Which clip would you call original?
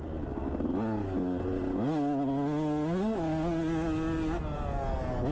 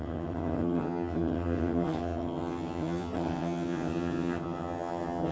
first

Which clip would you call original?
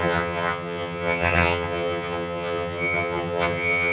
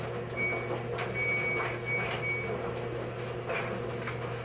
second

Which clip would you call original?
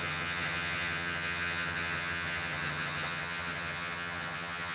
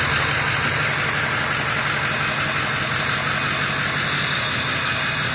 second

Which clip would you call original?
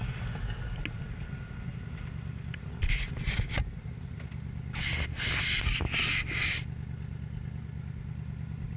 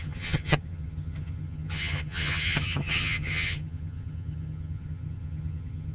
first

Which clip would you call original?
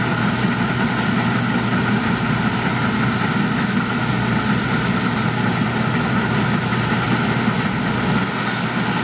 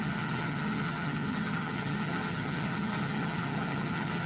first